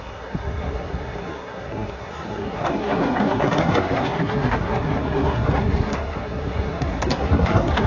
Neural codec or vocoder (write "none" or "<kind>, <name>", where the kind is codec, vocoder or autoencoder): codec, SNAC